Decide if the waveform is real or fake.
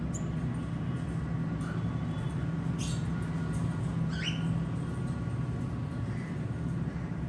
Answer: real